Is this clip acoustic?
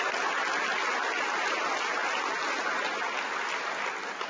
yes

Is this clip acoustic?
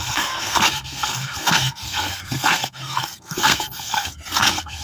no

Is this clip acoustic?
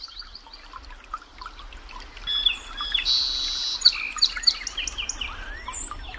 yes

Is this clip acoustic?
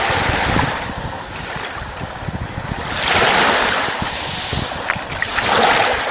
yes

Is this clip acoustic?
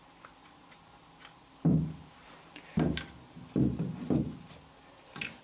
yes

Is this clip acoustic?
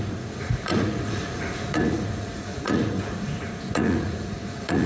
no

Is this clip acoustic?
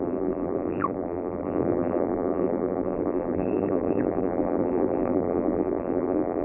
no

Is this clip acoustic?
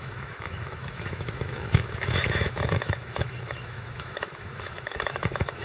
no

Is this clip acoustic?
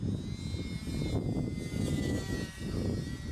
yes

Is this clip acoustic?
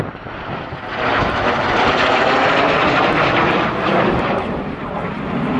yes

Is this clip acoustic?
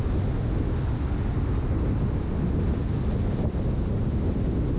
yes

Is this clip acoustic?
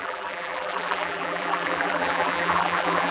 no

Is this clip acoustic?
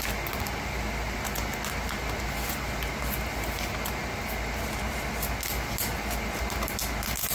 yes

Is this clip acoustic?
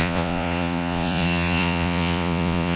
no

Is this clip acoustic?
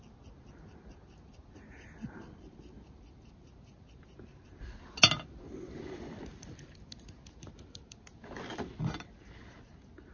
yes